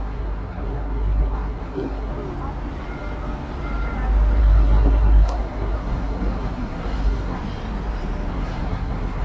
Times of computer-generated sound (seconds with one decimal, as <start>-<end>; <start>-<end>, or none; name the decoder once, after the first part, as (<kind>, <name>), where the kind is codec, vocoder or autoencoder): 0.0-2.1 (codec, SNAC); 4.4-7.4; 8.3-9.2